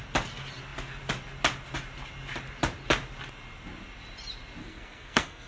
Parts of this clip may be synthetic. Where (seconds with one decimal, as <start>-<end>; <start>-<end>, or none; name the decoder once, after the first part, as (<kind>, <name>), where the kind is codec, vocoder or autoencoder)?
4.6-5.5 (codec, SNAC)